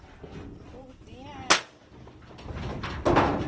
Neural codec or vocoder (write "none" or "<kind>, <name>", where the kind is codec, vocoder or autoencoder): none